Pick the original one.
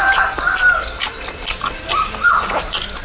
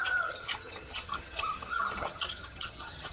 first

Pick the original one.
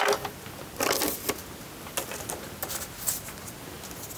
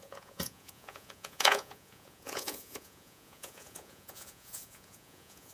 first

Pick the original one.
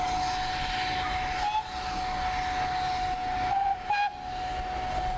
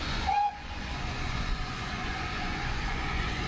first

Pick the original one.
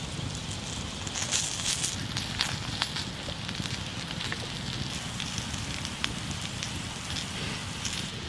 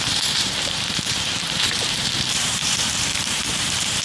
first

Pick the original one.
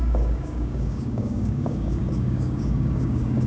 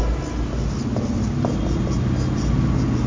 second